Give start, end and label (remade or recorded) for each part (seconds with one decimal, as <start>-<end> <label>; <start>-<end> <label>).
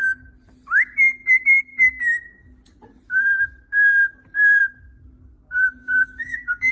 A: 0.0-5.8 recorded; 5.8-6.7 remade